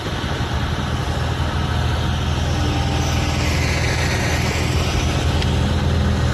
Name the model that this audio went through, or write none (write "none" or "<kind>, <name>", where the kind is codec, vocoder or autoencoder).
none